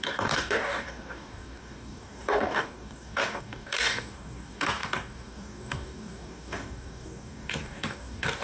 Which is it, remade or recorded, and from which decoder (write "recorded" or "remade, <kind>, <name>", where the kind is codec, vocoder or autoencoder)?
remade, codec, DAC